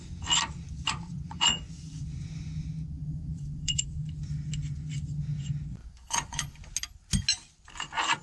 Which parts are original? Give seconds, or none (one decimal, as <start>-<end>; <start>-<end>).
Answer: 0.0-1.1; 1.6-3.0; 3.9-5.8; 6.6-8.2